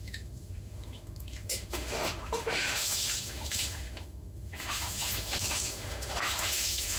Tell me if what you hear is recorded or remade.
remade